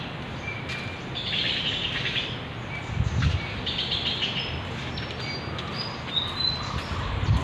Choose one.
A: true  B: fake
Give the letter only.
A